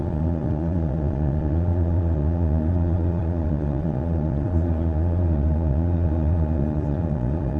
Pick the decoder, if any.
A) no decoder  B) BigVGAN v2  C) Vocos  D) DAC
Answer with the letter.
C